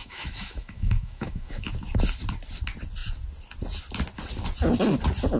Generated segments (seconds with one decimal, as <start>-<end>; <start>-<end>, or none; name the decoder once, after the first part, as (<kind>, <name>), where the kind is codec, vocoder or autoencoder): 0.0-1.7 (autoencoder, DAC-VAE)